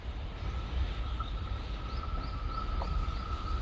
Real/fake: real